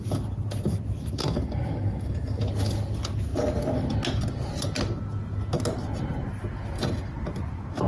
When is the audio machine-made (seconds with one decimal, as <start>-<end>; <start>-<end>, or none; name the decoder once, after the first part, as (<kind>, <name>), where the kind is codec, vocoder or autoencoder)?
1.2-2.4 (codec, DAC)